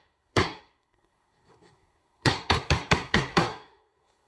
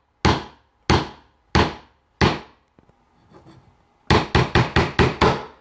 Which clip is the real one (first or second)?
second